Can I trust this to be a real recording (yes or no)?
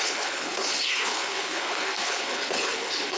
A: no